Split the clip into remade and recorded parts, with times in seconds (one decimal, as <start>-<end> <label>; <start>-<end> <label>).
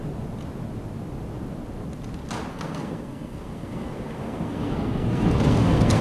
0.0-2.5 recorded; 2.5-6.0 remade